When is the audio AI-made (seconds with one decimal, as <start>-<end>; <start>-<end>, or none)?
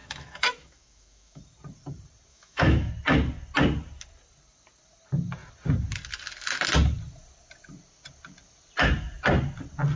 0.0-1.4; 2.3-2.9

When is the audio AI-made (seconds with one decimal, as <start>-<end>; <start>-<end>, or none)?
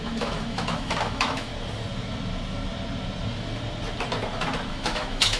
0.0-1.5; 4.7-5.4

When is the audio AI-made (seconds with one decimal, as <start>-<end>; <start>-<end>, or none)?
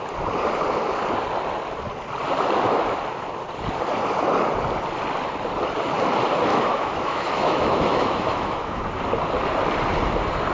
6.5-8.8